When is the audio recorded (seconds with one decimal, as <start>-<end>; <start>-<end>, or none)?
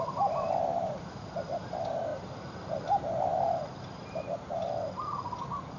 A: 0.0-5.8